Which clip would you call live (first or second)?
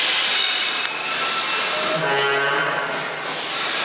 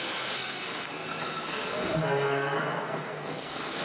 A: first